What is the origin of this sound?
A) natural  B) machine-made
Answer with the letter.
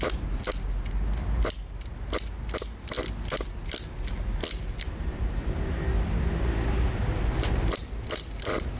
A